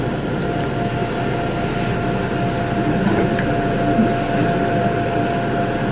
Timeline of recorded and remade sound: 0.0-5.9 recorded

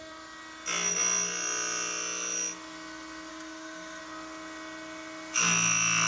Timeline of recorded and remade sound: 0.0-3.3 recorded; 3.3-4.0 remade; 4.0-6.1 recorded

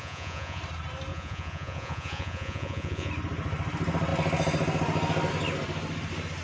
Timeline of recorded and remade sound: 0.0-0.6 remade; 0.6-1.1 recorded; 1.1-3.1 remade; 3.1-6.4 recorded